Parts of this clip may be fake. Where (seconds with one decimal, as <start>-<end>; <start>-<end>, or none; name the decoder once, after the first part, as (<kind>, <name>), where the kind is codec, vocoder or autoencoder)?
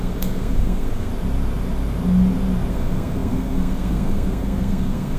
0.0-1.1 (codec, SNAC); 2.7-5.2